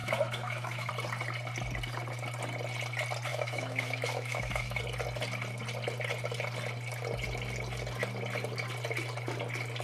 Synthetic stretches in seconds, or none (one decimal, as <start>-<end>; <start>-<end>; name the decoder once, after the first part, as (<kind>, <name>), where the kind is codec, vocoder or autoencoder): 0.0-0.9 (autoencoder, DAC-VAE); 3.3-4.8